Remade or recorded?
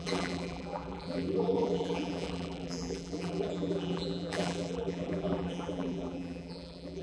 remade